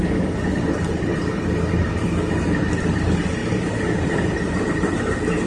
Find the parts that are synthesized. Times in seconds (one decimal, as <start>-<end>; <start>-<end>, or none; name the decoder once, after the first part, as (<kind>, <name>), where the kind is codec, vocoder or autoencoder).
0.0-1.1 (vocoder, BigVGAN v2); 1.8-5.5

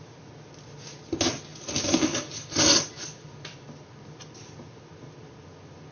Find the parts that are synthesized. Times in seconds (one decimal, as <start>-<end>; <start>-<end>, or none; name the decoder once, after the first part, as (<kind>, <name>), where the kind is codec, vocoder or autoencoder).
none